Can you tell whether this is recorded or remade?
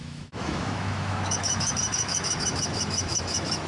remade